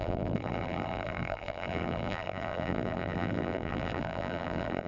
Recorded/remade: remade